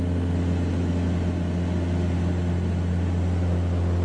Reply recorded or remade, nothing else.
recorded